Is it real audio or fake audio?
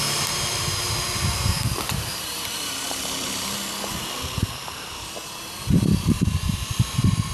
fake